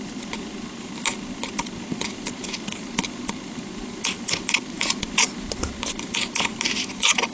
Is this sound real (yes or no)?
yes